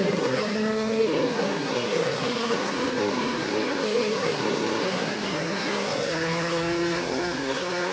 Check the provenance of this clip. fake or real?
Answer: fake